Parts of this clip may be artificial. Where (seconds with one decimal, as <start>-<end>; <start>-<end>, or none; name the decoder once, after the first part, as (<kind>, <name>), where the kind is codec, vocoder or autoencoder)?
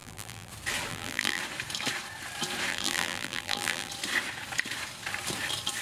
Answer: 0.0-0.5 (vocoder, BigVGAN v2); 0.9-1.4; 2.7-3.9